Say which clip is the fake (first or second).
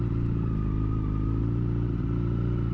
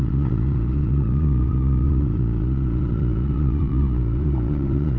second